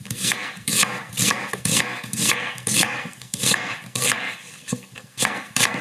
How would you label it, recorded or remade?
remade